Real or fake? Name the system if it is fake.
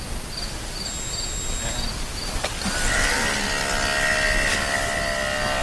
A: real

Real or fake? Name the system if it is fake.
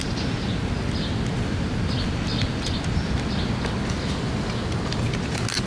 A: real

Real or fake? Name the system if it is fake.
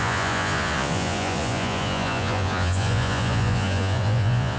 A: fake, vocoder, Vocos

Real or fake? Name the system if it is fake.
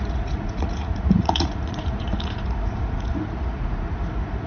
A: fake, vocoder, Vocos